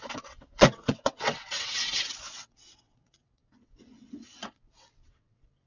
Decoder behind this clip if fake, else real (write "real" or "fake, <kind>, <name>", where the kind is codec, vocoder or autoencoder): fake, vocoder, WaveNeXt